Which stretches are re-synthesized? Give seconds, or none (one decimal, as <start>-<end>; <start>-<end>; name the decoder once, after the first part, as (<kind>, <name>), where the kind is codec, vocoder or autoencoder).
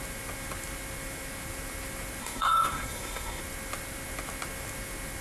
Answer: 2.2-3.4 (codec, SNAC)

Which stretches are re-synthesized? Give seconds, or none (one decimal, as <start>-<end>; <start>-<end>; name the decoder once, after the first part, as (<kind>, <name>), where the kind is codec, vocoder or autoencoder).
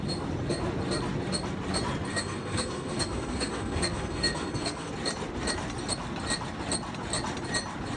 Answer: 2.1-4.9 (codec, SNAC)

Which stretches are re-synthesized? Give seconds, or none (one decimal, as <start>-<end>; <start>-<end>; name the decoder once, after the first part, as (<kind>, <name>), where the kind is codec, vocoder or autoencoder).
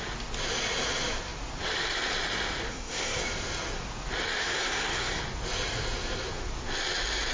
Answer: 2.7-3.2 (codec, SNAC); 4.4-5.2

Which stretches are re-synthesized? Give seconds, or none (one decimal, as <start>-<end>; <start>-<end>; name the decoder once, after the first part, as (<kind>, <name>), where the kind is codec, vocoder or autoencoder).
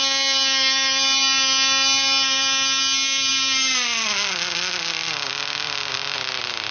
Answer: none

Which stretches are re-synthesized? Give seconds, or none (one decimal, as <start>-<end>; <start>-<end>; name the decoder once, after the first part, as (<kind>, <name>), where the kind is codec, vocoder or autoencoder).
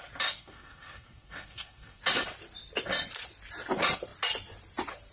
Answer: 0.4-2.0 (codec, SNAC)